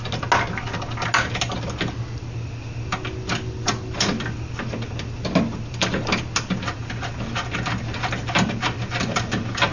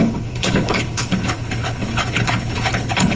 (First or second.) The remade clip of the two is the second